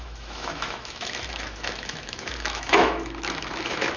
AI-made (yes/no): yes